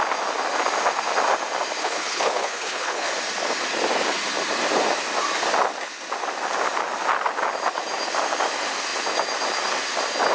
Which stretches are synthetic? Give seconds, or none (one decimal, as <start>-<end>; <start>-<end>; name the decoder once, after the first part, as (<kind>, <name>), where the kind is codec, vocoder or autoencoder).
1.8-3.1 (codec, HILCodec)